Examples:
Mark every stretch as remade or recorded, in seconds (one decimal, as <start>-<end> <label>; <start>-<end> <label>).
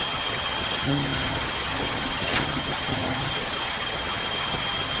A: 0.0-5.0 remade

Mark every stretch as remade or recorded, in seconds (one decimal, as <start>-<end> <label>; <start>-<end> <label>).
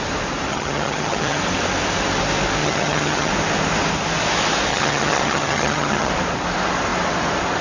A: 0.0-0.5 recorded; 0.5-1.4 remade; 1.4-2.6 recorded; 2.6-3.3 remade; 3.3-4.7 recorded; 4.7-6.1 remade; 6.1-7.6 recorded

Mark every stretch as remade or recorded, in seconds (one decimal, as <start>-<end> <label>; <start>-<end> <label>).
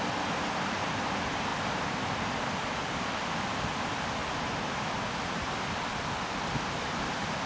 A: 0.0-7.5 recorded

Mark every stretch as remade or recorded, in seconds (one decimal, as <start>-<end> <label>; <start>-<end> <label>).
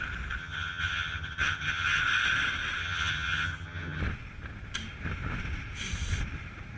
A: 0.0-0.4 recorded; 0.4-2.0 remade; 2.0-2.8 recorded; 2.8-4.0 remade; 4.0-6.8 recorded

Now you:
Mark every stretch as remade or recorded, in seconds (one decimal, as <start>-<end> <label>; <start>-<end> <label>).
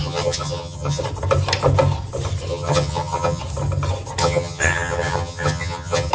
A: 0.0-1.0 remade; 1.0-2.5 recorded; 2.5-3.4 remade; 3.4-4.2 recorded; 4.2-6.1 remade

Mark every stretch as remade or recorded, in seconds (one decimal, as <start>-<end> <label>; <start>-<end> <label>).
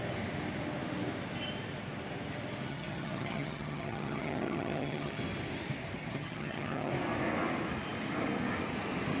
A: 0.0-2.7 recorded; 2.7-5.2 remade; 5.2-6.0 recorded; 6.0-6.9 remade; 6.9-9.2 recorded